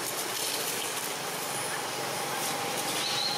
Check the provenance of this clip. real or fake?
real